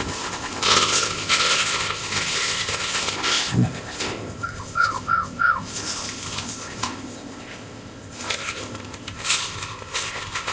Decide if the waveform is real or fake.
fake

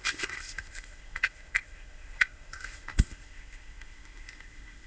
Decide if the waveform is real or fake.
fake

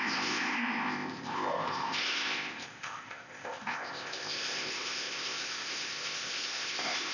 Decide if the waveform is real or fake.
fake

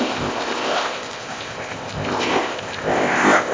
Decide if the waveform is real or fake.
fake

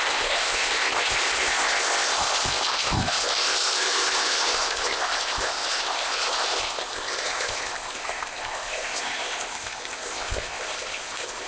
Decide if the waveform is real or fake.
fake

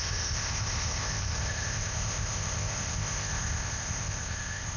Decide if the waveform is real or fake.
fake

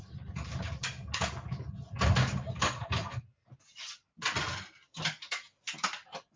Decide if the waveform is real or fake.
real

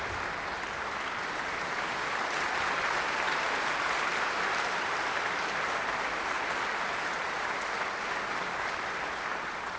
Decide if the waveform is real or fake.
real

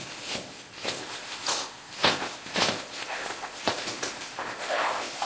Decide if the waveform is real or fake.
fake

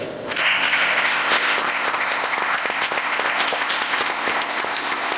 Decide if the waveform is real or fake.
fake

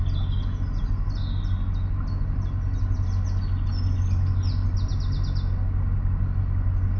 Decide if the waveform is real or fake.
real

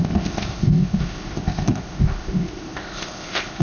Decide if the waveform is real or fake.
fake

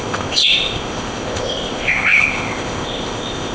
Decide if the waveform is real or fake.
fake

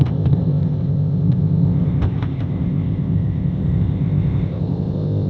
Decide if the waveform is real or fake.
fake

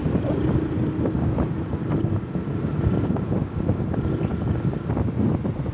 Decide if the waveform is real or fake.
real